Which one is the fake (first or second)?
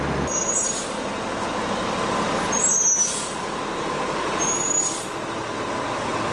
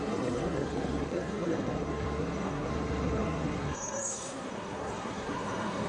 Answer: second